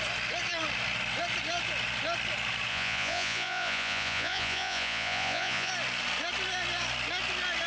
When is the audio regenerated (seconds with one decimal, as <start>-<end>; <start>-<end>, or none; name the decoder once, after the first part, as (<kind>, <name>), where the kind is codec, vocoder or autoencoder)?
2.7-5.7 (vocoder, Vocos)